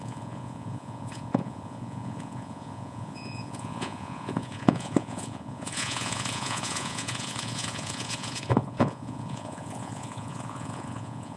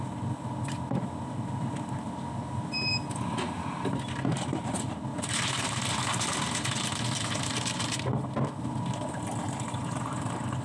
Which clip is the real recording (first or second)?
second